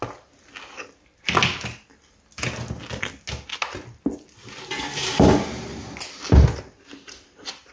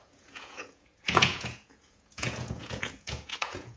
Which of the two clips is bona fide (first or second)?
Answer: first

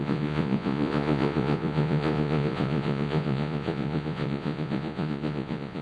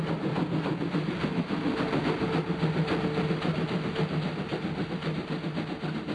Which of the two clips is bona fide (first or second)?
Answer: second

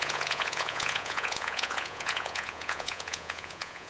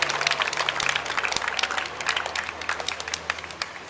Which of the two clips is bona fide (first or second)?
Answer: second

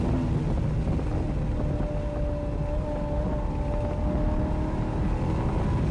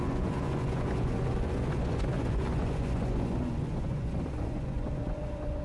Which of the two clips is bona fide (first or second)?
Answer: first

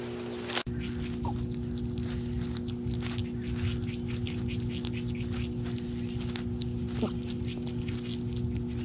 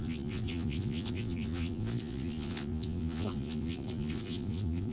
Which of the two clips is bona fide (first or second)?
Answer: first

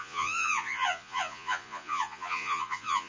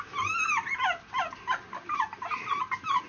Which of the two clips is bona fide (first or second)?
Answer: second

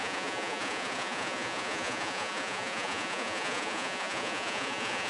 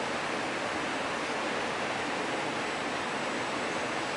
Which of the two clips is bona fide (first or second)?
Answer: second